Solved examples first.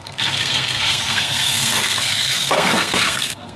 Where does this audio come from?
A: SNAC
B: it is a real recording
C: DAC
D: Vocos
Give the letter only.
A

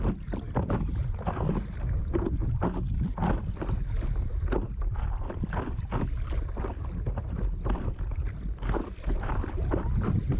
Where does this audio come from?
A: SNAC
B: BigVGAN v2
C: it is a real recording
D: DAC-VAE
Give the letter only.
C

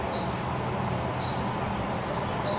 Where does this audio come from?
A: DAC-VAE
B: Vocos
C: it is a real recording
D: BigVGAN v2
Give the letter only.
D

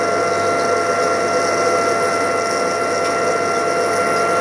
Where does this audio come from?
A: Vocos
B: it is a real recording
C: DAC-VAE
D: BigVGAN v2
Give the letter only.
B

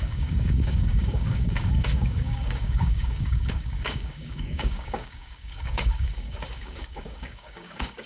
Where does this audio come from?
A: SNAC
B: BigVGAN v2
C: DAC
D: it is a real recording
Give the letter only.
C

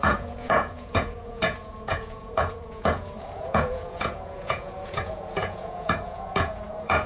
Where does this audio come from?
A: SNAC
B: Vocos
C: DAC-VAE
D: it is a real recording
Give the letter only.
B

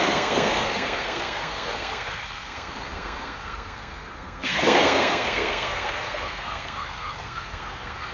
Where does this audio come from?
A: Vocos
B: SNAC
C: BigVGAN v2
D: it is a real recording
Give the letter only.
B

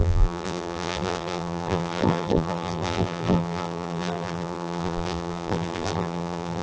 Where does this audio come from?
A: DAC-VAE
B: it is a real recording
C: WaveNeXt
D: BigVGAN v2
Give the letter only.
D